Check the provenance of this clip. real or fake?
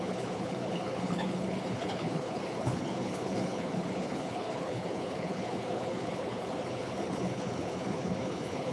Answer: fake